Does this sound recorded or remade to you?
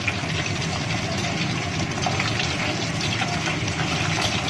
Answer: recorded